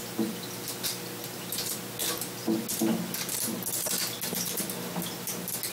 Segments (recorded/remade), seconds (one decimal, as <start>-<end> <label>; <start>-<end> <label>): 0.0-5.7 recorded